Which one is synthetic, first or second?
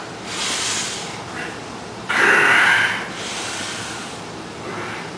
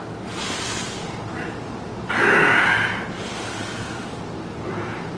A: first